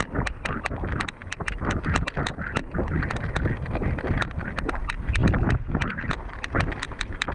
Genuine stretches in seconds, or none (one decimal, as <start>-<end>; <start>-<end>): 0.0-7.3